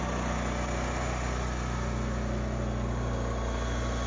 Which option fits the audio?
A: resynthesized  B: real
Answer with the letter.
B